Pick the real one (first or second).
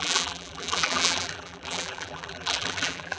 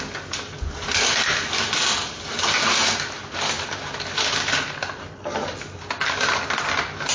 second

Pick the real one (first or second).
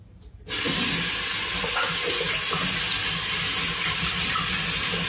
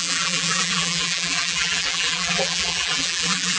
first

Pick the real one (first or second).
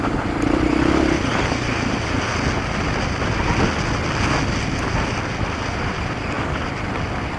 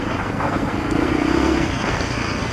first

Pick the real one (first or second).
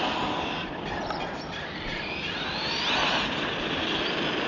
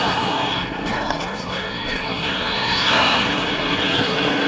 first